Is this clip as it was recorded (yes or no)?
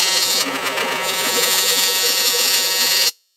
no